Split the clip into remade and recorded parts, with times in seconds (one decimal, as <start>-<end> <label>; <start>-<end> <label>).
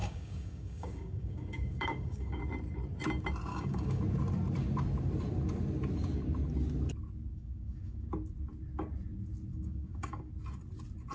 0.0-2.4 remade; 2.4-3.5 recorded; 3.5-4.0 remade; 4.0-7.3 recorded; 7.3-8.1 remade; 8.1-9.5 recorded; 9.5-10.3 remade; 10.3-11.1 recorded